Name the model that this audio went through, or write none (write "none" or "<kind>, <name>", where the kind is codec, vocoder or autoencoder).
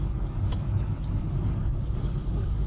codec, DAC